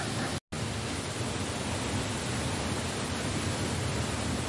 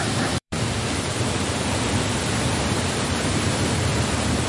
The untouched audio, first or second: first